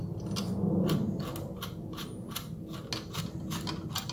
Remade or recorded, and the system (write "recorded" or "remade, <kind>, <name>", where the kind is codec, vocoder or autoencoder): recorded